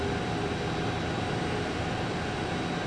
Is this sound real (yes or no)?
yes